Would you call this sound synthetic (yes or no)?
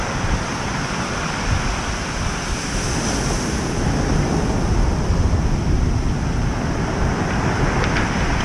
no